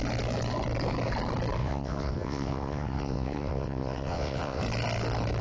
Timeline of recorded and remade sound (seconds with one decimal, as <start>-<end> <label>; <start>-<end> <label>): 0.0-1.6 recorded; 1.6-4.6 remade; 4.6-5.4 recorded